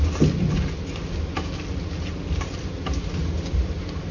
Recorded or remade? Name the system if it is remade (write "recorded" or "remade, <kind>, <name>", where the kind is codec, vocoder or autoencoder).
recorded